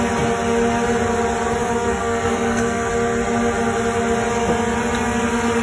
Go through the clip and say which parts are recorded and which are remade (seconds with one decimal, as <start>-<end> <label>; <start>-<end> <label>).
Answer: 0.0-1.6 recorded; 1.6-2.9 remade; 2.9-5.6 recorded